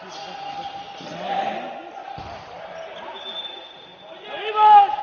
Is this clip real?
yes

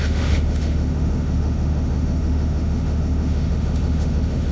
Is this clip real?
no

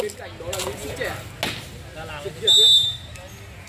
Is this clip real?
yes